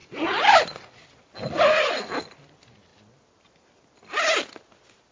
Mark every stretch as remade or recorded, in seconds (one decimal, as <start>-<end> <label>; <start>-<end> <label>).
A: 0.0-2.2 recorded; 2.2-2.9 remade; 2.9-4.5 recorded; 4.5-5.1 remade